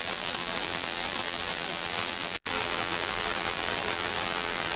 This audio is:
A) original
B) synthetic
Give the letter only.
B